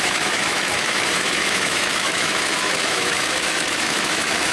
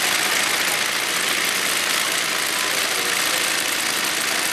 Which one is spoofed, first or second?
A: first